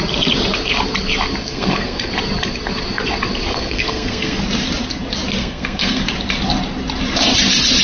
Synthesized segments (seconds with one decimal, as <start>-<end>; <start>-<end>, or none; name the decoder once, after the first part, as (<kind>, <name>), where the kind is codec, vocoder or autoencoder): 1.4-2.1 (codec, SNAC); 3.5-4.4; 5.4-6.0